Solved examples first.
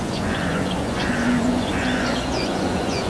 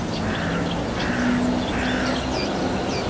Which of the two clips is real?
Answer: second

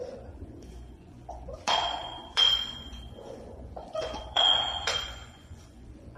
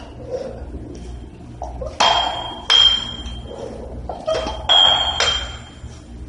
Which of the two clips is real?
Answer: second